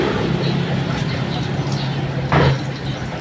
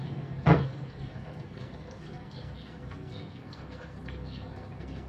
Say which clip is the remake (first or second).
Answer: second